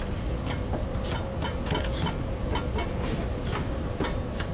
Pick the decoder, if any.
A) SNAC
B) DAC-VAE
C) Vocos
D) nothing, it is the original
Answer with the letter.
D